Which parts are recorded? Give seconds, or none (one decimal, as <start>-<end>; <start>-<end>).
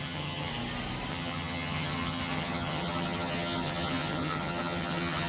0.5-1.1